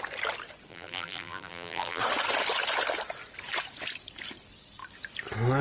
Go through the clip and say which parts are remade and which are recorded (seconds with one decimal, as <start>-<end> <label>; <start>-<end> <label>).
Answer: 0.0-0.7 recorded; 0.7-2.0 remade; 2.0-5.6 recorded